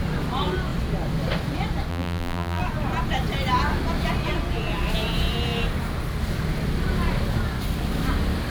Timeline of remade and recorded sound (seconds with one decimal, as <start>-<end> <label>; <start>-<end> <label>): 0.0-1.9 recorded; 1.9-2.6 remade; 2.6-8.5 recorded